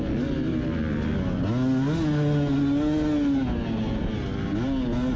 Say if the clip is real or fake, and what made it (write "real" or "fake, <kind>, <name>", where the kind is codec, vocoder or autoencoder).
real